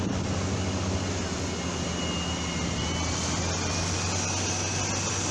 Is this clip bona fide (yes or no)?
yes